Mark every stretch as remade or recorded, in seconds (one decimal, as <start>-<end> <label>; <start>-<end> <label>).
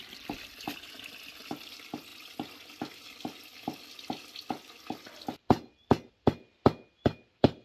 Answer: 0.0-7.6 recorded